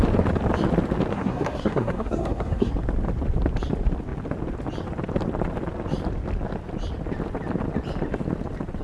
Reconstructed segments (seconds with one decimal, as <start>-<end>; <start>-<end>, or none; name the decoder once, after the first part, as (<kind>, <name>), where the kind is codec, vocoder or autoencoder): 1.1-2.7 (codec, SNAC)

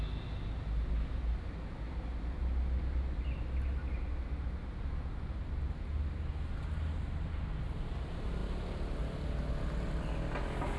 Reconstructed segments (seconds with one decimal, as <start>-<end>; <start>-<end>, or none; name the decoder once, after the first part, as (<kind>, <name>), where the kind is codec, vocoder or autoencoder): none

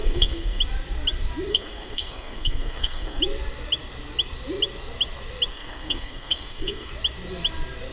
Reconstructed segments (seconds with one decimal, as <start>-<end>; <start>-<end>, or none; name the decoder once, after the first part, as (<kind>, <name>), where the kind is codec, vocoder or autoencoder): 0.0-0.6 (codec, SNAC); 1.5-3.2; 5.5-6.9

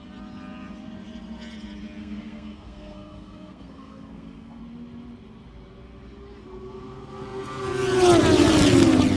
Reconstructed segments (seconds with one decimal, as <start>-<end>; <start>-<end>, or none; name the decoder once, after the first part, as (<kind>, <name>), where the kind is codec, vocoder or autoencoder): 2.0-4.6 (codec, SNAC)

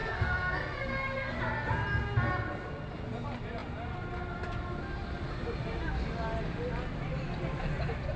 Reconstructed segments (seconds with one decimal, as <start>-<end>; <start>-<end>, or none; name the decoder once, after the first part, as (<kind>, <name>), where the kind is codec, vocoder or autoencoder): 0.0-1.4 (codec, SNAC)

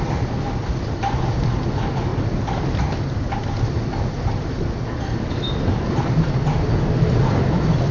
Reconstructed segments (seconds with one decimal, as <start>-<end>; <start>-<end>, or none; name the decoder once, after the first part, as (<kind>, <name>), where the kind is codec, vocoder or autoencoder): none

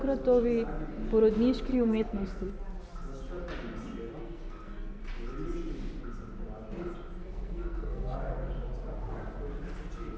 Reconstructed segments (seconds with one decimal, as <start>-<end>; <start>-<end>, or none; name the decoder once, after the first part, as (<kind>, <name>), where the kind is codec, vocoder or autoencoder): 1.7-2.5 (codec, SNAC); 4.2-5.0; 7.2-8.5